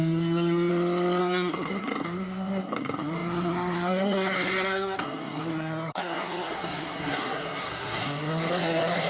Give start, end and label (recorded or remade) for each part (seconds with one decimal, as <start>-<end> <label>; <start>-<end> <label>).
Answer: 0.0-0.7 remade; 0.7-1.2 recorded; 1.2-9.1 remade